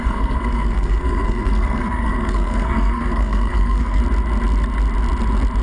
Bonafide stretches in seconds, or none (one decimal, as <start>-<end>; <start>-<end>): 4.0-5.6